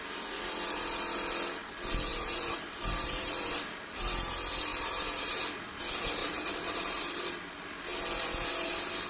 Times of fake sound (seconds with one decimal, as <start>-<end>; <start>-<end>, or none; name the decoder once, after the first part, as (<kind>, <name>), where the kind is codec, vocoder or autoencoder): 2.1-4.1 (vocoder, BigVGAN v2); 4.7-5.4; 6.2-7.2